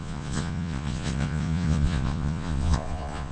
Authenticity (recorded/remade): remade